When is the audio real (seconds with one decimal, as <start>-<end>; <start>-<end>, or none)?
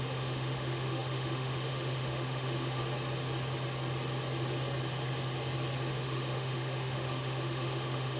2.8-5.9